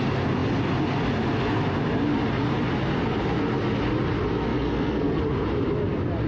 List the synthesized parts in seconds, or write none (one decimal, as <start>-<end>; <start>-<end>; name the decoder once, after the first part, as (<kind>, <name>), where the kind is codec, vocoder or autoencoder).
4.5-5.2 (codec, SNAC)

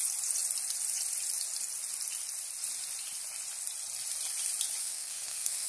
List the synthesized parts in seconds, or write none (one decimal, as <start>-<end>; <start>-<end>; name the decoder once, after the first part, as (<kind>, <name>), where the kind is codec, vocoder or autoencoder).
4.8-5.7 (codec, SNAC)

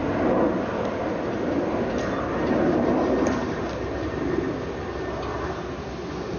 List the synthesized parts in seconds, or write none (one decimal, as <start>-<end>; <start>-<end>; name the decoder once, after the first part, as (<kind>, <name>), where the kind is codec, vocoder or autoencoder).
none

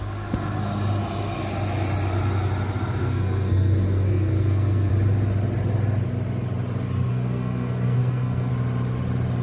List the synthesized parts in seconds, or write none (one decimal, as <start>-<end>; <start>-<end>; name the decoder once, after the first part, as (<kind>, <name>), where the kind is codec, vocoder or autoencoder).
3.0-4.9 (codec, SNAC); 7.1-8.5

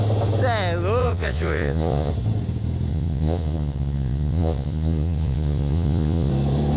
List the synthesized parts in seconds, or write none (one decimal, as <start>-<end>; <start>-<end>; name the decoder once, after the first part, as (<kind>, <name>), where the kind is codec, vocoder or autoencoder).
1.0-2.1 (vocoder, Vocos); 2.9-6.3

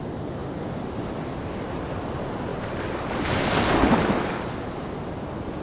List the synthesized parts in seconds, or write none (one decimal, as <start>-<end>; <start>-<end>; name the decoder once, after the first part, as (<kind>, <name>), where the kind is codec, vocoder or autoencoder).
none